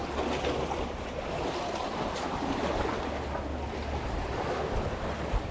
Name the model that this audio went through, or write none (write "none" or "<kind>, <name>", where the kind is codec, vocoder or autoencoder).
none